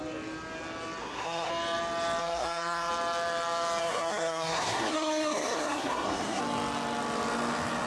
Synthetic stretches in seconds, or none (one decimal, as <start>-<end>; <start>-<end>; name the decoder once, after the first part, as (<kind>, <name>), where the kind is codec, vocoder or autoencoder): 1.0-1.5 (codec, SNAC); 2.2-2.9; 3.8-6.4